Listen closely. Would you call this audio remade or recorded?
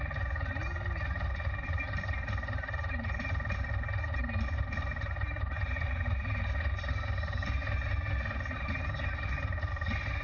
recorded